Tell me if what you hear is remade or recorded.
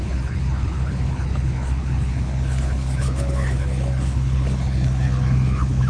remade